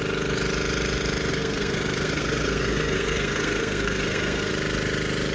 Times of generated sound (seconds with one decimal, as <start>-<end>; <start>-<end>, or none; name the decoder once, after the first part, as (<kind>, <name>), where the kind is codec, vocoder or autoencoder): 1.3-4.5 (codec, SNAC)